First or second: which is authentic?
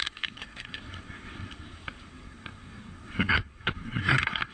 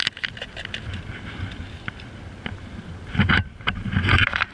second